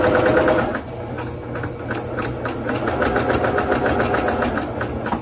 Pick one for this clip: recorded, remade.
recorded